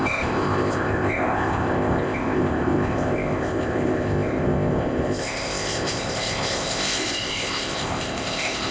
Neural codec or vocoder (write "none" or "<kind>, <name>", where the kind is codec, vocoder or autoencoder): codec, ZipCodec